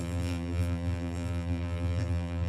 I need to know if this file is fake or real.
fake